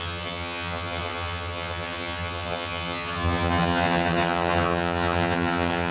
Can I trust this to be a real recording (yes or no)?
no